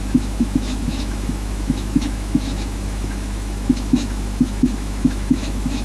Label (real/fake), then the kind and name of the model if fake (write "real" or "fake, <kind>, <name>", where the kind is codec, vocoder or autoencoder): fake, autoencoder, DAC-VAE